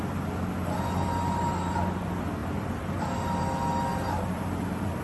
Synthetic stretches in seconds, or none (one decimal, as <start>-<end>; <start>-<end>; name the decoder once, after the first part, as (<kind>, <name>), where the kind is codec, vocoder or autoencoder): 2.4-3.0 (vocoder, BigVGAN v2); 3.9-5.0